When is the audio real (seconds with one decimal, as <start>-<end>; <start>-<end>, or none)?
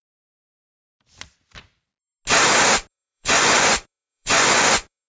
0.9-2.9